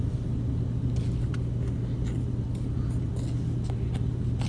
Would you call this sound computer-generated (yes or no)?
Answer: no